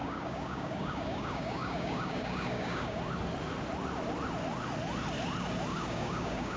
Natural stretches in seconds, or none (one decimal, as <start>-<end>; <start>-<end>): 3.0-5.7

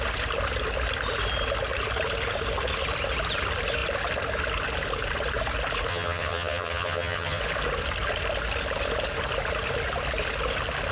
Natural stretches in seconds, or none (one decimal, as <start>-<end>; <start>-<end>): 0.0-5.9; 7.4-10.9